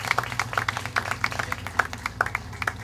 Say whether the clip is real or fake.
real